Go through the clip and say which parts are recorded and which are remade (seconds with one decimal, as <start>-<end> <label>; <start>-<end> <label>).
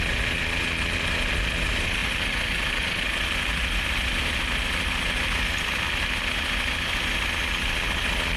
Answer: 0.0-8.4 recorded